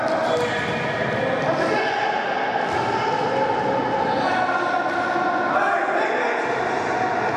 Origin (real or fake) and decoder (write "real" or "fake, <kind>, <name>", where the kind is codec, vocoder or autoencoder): real